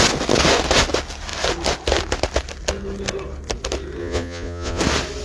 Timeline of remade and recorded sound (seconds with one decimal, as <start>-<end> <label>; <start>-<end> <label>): 0.0-4.0 recorded; 4.0-4.8 remade; 4.8-5.2 recorded